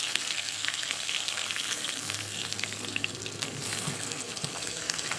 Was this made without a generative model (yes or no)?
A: no